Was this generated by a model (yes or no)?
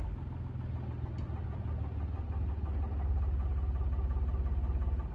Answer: no